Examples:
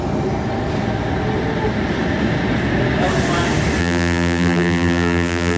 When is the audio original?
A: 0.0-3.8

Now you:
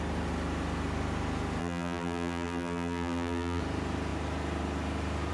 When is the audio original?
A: 0.0-1.6; 3.6-5.3

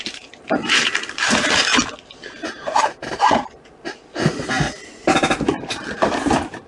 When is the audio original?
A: 1.7-2.5

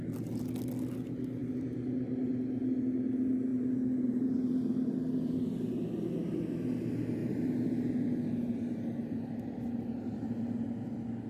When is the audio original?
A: 0.0-1.4; 2.4-3.5; 4.5-7.2; 10.6-11.3

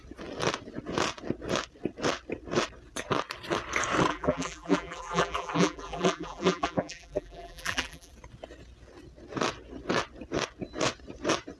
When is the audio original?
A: 0.0-4.1; 8.1-11.6

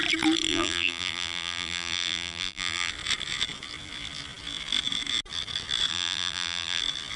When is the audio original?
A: 0.0-0.5; 2.9-5.9; 6.8-7.2

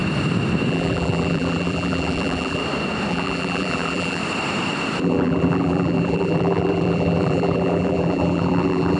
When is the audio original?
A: 0.0-0.7; 2.6-3.1; 4.2-5.0